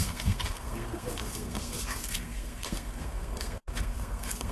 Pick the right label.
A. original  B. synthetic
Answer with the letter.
B